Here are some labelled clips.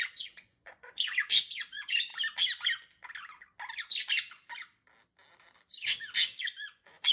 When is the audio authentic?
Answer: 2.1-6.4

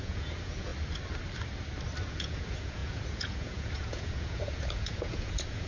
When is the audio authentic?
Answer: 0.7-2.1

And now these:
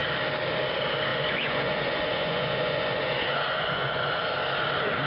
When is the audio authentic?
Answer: 0.0-1.1; 4.2-5.1